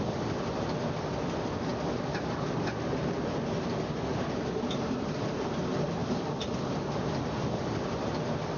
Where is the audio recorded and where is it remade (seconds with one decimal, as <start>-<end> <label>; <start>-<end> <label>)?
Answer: 0.0-6.0 recorded; 6.0-8.6 remade